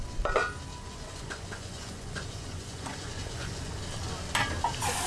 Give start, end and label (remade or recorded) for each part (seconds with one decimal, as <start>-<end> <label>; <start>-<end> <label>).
0.0-0.7 recorded; 0.7-3.8 remade; 3.8-5.1 recorded